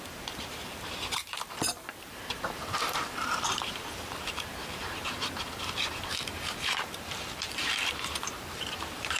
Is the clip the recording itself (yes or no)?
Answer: no